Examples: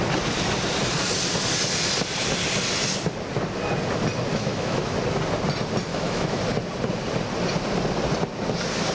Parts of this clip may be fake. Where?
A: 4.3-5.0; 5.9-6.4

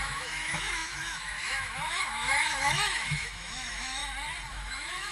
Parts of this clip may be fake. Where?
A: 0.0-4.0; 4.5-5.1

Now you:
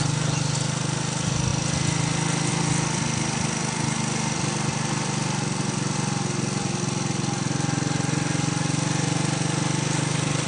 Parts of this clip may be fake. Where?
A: none

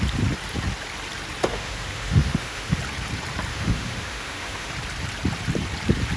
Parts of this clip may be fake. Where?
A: 1.5-2.8; 3.5-4.7

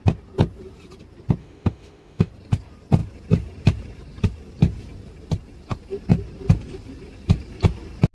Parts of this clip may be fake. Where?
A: 1.4-2.3

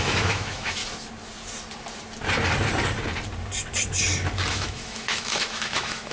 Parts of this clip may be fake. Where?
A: 0.0-0.8; 4.5-6.1

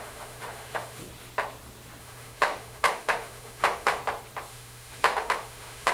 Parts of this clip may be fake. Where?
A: 0.0-1.0; 2.0-4.0; 4.5-5.9

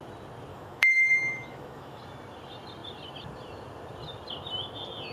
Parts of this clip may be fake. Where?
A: 0.5-2.0